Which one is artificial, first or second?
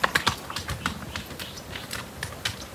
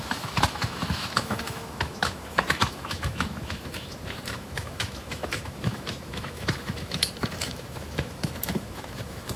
second